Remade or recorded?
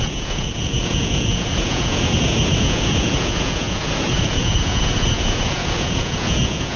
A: remade